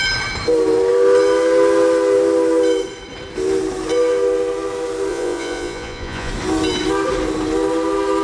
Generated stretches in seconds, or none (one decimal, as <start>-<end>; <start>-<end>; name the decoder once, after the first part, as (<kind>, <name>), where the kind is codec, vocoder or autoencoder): 5.1-6.3 (vocoder, Vocos)